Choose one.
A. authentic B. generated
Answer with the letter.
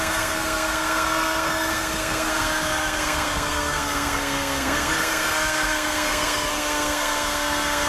B